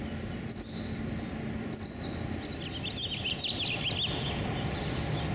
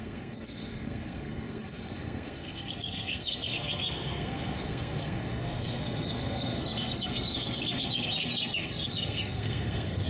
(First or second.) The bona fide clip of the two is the first